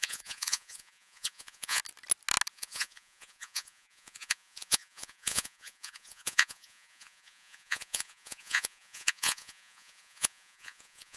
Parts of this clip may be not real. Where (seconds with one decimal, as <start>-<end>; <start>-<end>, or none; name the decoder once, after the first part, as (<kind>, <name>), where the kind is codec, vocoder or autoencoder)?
0.0-1.8 (vocoder, Vocos); 2.5-11.2